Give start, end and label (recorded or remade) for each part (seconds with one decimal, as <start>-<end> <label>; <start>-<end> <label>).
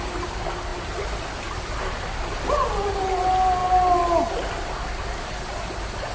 0.0-6.1 recorded